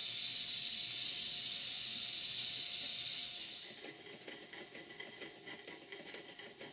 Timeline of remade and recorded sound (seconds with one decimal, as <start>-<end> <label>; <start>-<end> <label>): 0.0-6.7 recorded